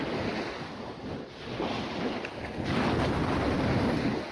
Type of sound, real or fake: real